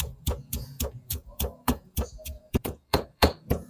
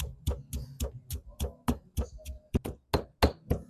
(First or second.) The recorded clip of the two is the second